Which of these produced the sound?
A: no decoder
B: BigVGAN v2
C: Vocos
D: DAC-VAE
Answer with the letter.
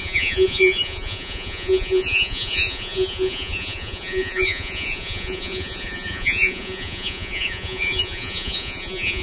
C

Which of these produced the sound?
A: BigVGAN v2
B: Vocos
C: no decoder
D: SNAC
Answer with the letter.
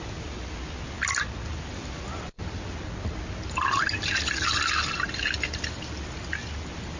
C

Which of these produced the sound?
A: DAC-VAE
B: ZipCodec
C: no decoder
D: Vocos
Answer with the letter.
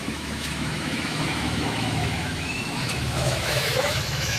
A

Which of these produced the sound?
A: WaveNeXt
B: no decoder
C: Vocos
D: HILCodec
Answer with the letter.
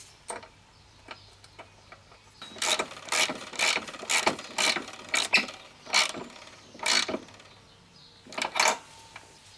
B